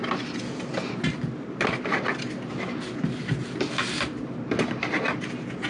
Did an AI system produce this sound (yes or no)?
no